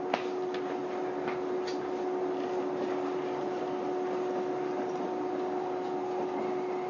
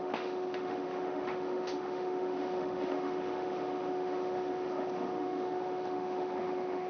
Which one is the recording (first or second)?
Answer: first